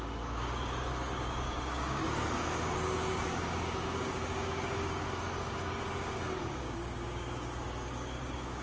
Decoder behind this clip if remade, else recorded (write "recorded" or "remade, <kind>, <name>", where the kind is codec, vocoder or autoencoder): remade, codec, DAC